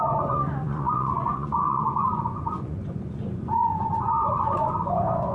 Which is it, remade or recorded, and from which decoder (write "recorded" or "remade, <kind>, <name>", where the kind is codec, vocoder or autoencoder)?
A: remade, vocoder, Vocos